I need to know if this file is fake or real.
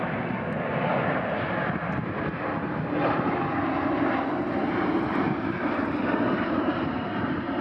fake